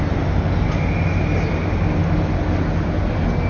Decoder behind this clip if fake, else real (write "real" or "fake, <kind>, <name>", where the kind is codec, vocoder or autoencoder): real